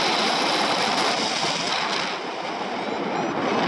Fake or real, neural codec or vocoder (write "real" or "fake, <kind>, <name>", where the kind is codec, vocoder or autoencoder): real